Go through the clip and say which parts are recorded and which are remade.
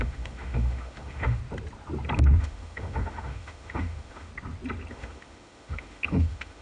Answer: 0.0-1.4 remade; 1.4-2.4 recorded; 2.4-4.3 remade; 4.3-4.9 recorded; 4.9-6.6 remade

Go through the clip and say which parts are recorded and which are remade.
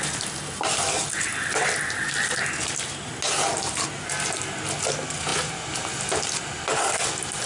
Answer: 0.0-7.5 recorded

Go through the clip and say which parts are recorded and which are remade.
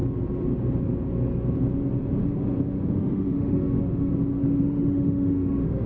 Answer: 0.0-3.0 recorded; 3.0-4.1 remade; 4.1-4.6 recorded; 4.6-5.9 remade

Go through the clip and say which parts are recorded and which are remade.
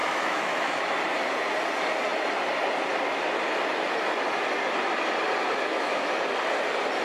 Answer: 0.0-0.9 remade; 0.9-5.7 recorded; 5.7-6.2 remade; 6.2-7.0 recorded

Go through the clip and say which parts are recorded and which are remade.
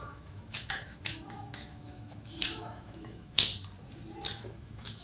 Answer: 0.0-3.5 remade; 3.5-4.4 recorded; 4.4-5.0 remade